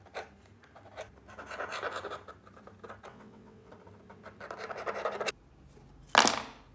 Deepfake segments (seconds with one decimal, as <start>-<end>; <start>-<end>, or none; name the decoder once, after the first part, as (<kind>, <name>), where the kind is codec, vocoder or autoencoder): 3.1-3.7 (vocoder, WaveNeXt)